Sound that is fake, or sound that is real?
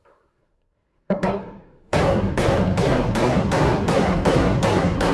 fake